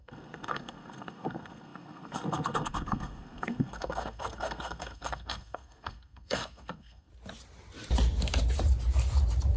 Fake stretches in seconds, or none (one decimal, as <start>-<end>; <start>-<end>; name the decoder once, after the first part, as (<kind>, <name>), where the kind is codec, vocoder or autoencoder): 0.0-7.1 (codec, SNAC)

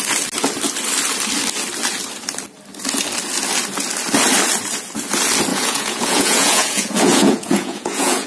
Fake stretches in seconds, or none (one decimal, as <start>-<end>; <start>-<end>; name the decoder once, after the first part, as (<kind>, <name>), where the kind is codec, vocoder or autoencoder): 5.5-8.3 (vocoder, Vocos)

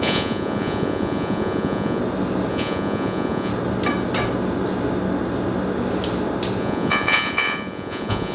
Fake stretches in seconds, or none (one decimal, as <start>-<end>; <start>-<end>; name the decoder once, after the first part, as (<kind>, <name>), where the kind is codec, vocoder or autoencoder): 0.0-2.0 (vocoder, Vocos); 2.5-3.5; 6.6-8.3

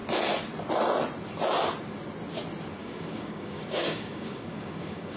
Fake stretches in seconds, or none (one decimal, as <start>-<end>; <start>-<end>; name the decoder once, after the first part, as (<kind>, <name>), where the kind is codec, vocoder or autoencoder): 2.8-5.2 (codec, DAC)

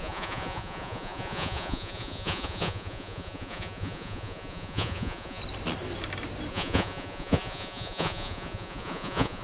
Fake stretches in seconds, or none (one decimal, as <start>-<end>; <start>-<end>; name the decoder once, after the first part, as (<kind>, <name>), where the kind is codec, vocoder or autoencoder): 0.0-5.4 (vocoder, Vocos); 6.5-9.4

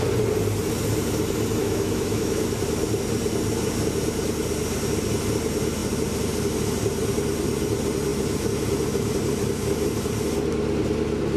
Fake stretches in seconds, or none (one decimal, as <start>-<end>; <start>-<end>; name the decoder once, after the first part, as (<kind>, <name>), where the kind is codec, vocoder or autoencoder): 1.6-2.4 (autoencoder, DAC-VAE)

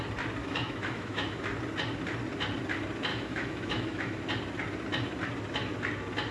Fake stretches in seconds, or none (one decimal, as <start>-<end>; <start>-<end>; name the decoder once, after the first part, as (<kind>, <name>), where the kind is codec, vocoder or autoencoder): 0.4-1.4 (autoencoder, DAC-VAE); 3.1-4.2

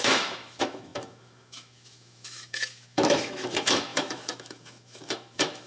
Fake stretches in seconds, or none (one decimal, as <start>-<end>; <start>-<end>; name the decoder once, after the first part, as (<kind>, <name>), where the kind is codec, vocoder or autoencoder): 0.0-5.7 (autoencoder, DAC-VAE)